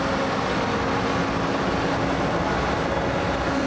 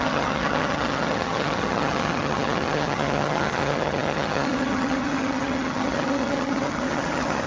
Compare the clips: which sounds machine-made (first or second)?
second